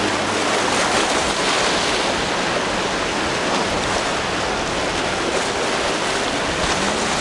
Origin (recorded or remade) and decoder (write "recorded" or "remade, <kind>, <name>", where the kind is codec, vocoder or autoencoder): recorded